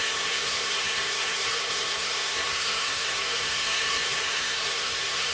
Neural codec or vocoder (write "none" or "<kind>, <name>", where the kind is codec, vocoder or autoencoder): codec, SNAC